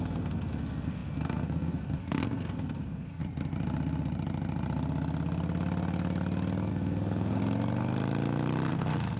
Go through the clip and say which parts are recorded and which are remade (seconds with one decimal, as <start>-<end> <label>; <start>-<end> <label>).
0.0-3.2 remade; 3.2-6.7 recorded; 6.7-7.4 remade; 7.4-8.7 recorded; 8.7-9.2 remade